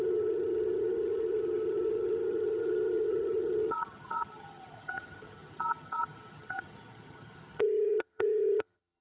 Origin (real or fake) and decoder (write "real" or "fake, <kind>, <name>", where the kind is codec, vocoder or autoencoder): fake, vocoder, HiFi-GAN